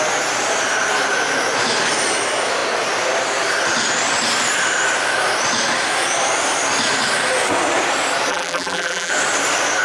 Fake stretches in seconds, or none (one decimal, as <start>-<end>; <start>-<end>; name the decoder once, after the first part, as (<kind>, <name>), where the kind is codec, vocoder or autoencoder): 8.3-9.1 (vocoder, BigVGAN v2)

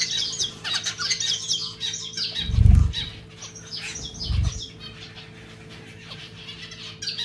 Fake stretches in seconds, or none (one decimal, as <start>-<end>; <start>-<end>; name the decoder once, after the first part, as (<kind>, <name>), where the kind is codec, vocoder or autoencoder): none

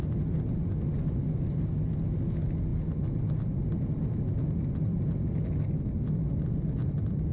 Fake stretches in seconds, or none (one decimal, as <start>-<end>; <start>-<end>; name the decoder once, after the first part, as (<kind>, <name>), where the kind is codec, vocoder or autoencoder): none

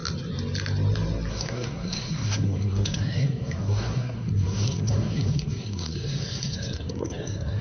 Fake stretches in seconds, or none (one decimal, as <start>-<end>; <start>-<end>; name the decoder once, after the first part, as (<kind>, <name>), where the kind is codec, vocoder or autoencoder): 1.3-7.6 (codec, SNAC)

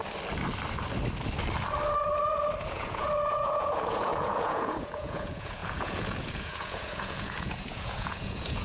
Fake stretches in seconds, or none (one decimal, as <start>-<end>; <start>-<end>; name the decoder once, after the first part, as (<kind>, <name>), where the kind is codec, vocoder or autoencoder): 2.6-8.6 (vocoder, Vocos)

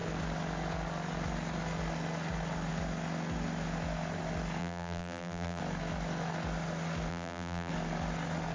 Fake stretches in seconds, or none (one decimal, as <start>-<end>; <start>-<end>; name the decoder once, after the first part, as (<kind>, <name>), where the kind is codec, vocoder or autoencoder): 4.6-5.6 (vocoder, BigVGAN v2); 7.1-7.7

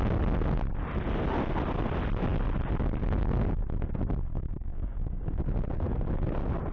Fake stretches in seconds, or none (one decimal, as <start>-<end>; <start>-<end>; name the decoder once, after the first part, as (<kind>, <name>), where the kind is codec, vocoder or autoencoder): 4.3-5.2 (codec, DAC)

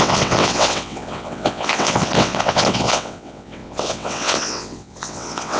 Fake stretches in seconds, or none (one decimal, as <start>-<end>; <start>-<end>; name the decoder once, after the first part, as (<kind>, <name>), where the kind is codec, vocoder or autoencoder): 0.0-5.6 (vocoder, WaveNeXt)